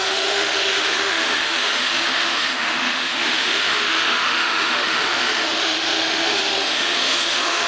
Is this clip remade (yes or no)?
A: yes